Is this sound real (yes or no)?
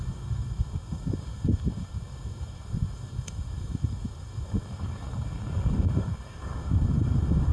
no